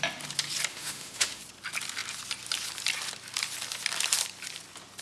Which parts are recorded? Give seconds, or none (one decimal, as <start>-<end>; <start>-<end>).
0.0-0.7; 1.4-5.0